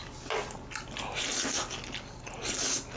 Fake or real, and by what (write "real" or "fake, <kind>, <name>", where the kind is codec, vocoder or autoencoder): real